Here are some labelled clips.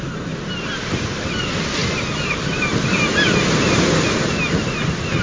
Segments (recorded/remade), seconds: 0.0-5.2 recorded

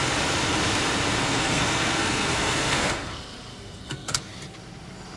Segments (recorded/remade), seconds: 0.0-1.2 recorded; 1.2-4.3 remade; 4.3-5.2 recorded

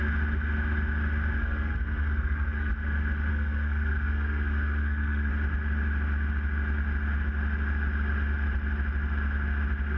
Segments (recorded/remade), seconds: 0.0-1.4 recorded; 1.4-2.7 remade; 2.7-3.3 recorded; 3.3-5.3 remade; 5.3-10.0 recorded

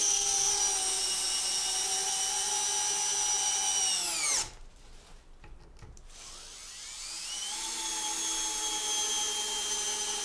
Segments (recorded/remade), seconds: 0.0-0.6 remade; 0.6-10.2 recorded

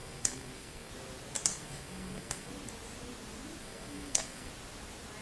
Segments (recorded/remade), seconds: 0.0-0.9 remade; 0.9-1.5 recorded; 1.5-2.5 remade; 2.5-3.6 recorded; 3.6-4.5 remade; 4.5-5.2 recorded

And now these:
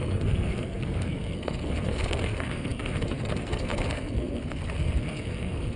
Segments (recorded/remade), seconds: 0.0-5.8 remade

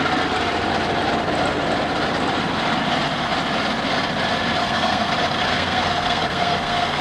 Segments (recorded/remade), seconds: 0.0-4.6 recorded; 4.6-5.1 remade; 5.1-5.5 recorded; 5.5-7.0 remade